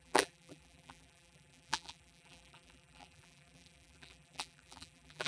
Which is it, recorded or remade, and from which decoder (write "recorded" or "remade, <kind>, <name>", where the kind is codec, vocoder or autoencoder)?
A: remade, vocoder, BigVGAN v2